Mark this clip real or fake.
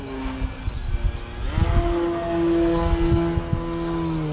real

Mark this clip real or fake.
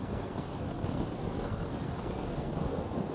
fake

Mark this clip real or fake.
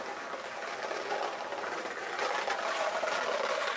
real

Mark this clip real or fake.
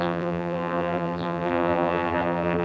fake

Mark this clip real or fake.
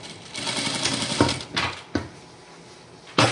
real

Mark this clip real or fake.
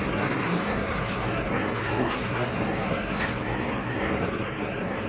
fake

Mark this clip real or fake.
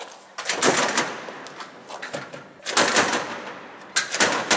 real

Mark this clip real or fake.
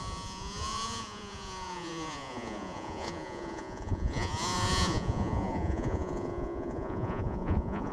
fake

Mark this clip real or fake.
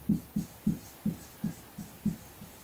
real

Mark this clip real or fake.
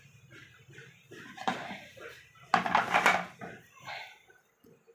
real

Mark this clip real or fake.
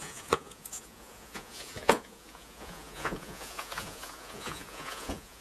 fake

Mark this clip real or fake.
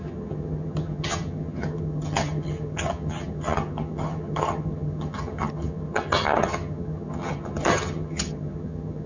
fake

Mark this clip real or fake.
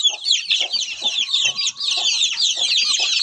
real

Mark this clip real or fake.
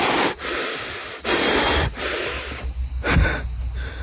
real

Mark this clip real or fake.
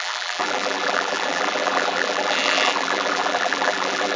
fake